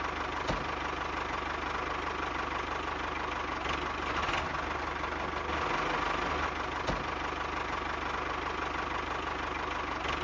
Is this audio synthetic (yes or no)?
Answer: no